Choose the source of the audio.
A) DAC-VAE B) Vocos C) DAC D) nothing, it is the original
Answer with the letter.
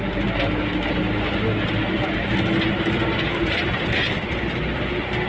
D